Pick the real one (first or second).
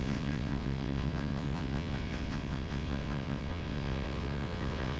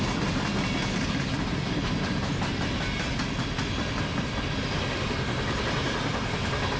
second